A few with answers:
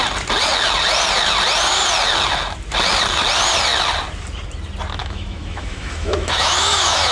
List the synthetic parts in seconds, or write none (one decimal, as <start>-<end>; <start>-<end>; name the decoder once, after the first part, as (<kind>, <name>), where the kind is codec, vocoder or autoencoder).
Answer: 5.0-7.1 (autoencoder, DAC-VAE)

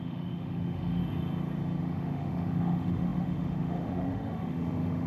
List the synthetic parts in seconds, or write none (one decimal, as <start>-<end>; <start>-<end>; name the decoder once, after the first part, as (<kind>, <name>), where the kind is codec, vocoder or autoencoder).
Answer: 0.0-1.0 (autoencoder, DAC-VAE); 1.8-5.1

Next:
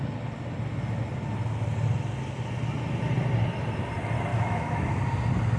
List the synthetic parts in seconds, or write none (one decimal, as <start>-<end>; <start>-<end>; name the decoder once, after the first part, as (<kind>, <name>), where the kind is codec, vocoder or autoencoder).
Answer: 4.3-5.0 (autoencoder, DAC-VAE)

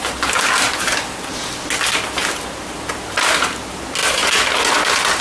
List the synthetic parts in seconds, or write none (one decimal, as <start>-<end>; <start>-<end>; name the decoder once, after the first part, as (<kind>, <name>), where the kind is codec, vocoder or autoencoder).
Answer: none

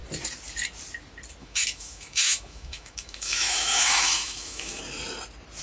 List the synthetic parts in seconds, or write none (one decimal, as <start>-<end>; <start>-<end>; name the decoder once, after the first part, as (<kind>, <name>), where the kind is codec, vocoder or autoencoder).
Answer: 1.4-4.8 (autoencoder, DAC-VAE)

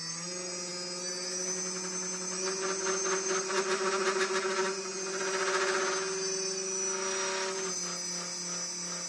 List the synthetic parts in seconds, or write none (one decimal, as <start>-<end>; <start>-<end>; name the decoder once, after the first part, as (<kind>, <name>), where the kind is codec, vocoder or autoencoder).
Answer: none

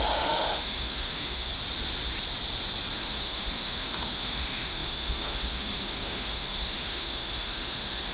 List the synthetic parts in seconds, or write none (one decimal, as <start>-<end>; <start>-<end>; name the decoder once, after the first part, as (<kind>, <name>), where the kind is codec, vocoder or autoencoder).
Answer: 0.0-1.5 (autoencoder, DAC-VAE); 3.0-8.1